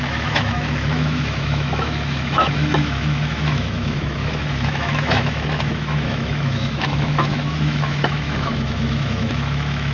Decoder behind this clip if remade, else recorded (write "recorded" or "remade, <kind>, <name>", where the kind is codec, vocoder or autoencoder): remade, autoencoder, DAC-VAE